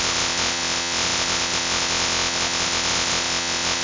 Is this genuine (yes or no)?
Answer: no